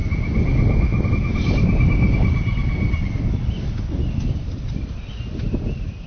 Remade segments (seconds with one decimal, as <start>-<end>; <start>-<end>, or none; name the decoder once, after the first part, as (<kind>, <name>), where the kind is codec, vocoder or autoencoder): none